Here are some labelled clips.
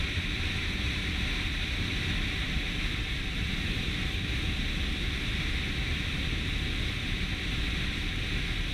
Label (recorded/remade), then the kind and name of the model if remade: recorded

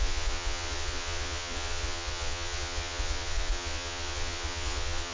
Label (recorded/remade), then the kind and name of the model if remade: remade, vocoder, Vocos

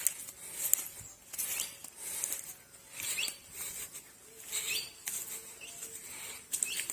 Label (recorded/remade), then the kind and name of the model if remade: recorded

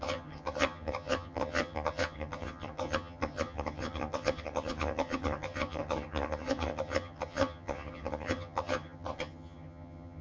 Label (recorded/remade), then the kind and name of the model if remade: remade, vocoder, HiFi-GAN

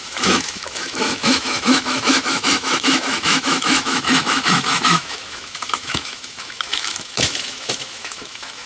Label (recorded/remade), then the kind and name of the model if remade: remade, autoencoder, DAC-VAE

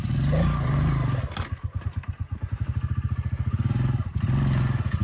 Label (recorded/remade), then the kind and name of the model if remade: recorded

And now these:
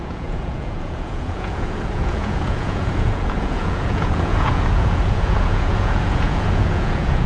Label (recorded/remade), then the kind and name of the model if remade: remade, vocoder, Vocos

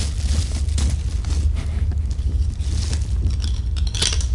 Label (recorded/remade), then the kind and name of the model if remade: recorded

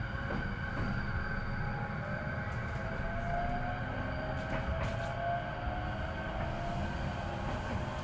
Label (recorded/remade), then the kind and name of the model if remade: recorded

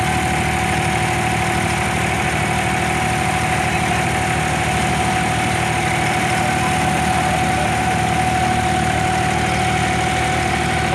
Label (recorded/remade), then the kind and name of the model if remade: recorded